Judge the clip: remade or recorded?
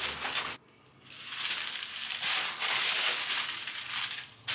recorded